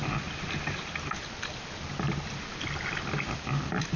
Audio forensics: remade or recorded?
recorded